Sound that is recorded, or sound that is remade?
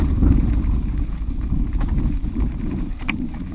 remade